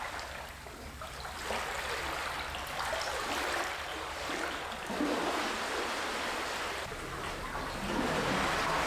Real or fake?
real